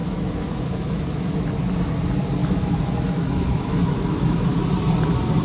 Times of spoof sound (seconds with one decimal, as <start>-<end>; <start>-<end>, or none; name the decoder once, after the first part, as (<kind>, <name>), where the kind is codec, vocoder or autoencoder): 0.0-1.2 (autoencoder, DAC-VAE); 2.4-4.6